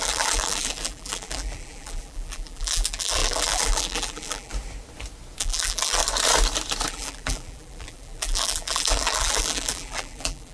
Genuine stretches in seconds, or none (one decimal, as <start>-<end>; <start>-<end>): 4.5-5.4; 6.0-6.9